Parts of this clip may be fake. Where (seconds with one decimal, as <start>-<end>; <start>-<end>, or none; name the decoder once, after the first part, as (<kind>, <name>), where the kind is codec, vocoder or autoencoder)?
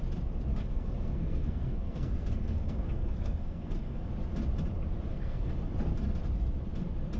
0.5-4.1 (codec, SNAC); 5.1-5.7